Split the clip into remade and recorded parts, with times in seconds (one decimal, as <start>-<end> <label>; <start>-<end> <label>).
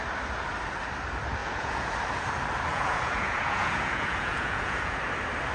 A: 0.0-1.4 recorded; 1.4-1.9 remade; 1.9-2.7 recorded; 2.7-5.0 remade; 5.0-5.5 recorded